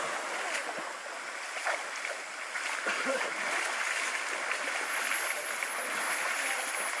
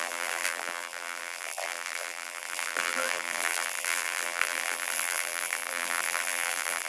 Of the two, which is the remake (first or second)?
second